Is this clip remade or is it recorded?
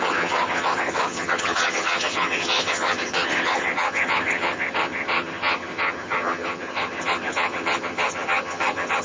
remade